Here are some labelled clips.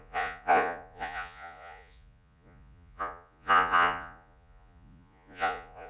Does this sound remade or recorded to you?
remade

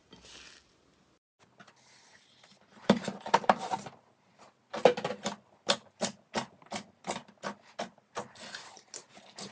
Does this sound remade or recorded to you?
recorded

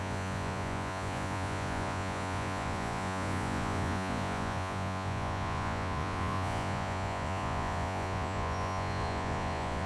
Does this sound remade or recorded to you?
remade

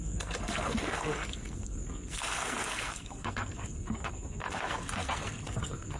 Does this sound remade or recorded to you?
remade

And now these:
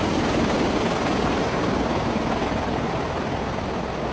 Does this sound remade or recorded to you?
recorded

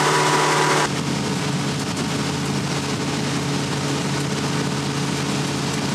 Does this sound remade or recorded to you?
recorded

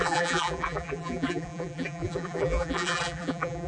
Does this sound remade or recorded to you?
remade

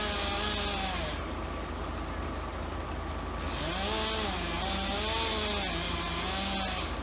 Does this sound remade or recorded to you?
recorded